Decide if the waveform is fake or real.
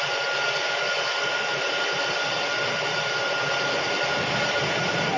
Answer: real